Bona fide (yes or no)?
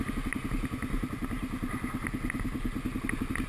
yes